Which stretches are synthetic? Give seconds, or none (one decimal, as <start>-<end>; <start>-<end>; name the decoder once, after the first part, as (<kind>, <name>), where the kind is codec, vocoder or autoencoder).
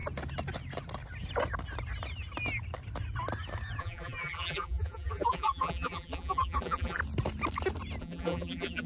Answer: 3.8-7.0 (vocoder, BigVGAN v2); 8.0-8.9